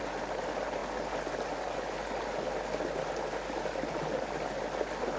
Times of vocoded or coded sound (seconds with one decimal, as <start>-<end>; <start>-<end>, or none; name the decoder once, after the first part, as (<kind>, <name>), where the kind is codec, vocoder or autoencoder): none